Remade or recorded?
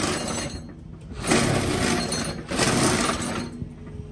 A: recorded